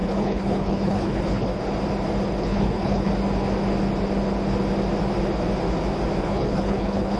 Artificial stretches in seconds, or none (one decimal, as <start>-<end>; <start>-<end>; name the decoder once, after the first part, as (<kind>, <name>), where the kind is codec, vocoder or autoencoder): 0.0-1.5 (codec, HILCodec); 2.4-3.1; 6.2-7.2